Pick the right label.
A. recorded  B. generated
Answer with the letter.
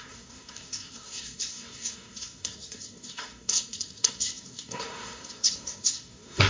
B